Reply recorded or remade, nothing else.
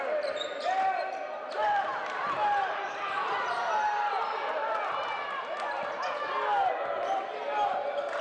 recorded